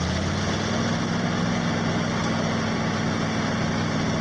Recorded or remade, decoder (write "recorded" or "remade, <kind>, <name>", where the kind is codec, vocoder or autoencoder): recorded